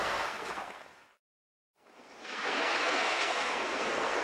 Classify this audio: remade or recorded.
remade